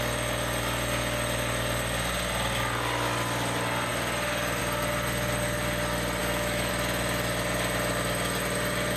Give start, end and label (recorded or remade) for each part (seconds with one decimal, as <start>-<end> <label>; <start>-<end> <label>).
0.0-6.2 recorded; 6.2-6.7 remade; 6.7-9.0 recorded